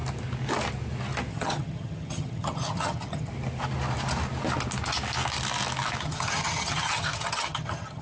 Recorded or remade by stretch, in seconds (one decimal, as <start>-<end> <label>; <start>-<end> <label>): 0.0-1.3 recorded; 1.3-3.3 remade; 3.3-6.0 recorded; 6.0-8.0 remade